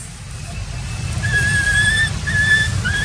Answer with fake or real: real